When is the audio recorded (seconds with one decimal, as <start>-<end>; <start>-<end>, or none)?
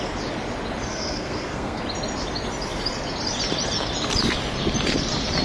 0.0-0.9; 1.8-5.4